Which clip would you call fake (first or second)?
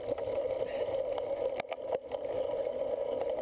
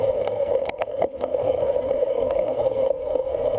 second